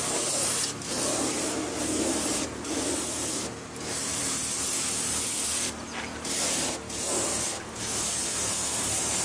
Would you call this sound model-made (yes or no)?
yes